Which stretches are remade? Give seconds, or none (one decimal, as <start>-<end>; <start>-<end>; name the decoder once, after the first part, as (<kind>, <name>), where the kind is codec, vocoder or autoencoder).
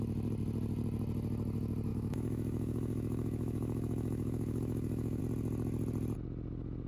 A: 1.9-5.2 (autoencoder, DAC-VAE)